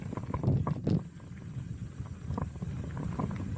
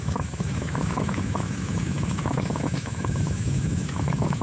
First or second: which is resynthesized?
second